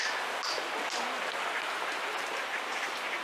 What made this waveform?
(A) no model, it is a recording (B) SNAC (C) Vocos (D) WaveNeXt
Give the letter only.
A